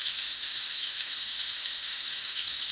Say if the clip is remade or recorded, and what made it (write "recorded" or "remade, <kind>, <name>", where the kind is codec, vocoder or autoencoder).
remade, autoencoder, DAC-VAE